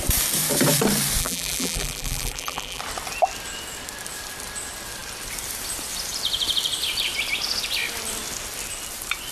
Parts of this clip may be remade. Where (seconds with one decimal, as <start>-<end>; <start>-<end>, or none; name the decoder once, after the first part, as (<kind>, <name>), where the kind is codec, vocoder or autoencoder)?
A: 1.2-2.8 (vocoder, BigVGAN v2)